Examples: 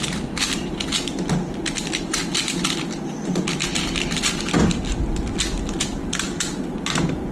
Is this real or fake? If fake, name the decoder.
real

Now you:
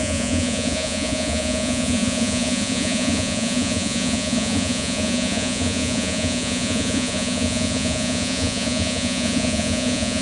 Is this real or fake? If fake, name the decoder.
fake, vocoder, Vocos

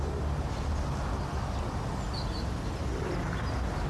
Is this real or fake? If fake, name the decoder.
real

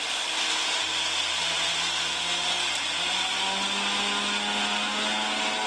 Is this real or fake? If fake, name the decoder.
real